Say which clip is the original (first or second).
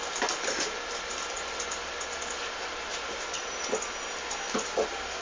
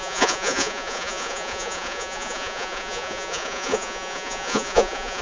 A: first